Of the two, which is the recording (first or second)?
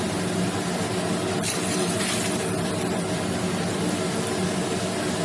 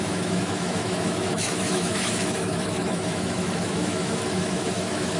first